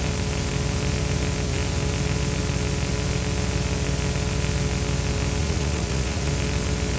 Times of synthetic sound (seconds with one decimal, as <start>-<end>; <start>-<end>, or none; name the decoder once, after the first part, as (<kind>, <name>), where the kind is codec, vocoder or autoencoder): 5.4-6.3 (vocoder, Vocos)